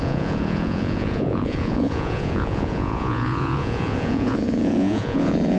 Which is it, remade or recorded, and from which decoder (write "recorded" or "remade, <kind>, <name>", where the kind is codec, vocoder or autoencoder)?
remade, vocoder, Vocos